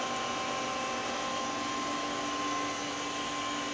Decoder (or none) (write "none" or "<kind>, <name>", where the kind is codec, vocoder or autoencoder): none